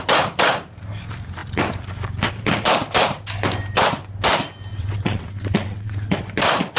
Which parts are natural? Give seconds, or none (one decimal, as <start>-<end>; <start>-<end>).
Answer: 0.0-4.7; 6.1-6.8